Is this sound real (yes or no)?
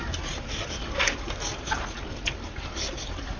yes